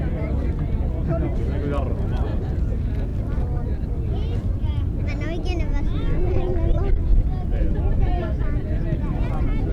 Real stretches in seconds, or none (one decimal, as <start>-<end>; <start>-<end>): 0.0-9.7